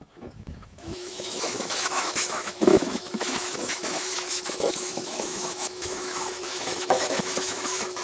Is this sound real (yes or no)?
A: no